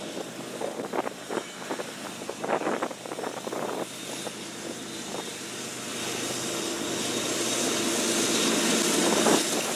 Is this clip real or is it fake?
real